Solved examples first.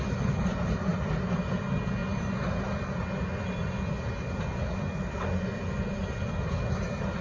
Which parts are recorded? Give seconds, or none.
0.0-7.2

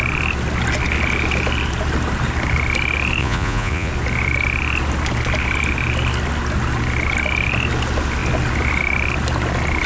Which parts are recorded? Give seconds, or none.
0.0-3.2; 3.9-9.9

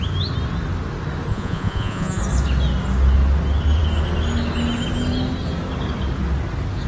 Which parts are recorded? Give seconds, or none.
0.0-1.3; 2.2-6.9